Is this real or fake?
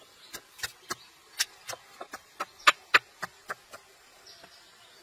real